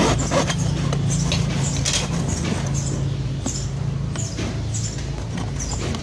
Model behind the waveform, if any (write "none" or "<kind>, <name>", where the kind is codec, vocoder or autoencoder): none